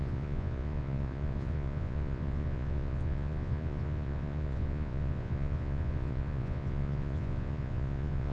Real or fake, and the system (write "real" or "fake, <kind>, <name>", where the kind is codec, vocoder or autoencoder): fake, vocoder, Vocos